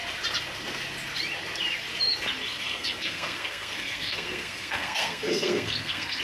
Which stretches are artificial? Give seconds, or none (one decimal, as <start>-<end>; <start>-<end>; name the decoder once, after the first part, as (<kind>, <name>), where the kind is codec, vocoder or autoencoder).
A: 2.5-6.2 (codec, SNAC)